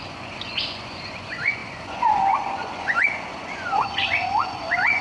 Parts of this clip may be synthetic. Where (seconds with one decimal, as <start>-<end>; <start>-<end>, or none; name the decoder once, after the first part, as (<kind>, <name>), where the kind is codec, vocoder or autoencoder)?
0.0-5.0 (vocoder, Vocos)